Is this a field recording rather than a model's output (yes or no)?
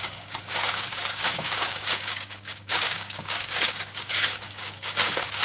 no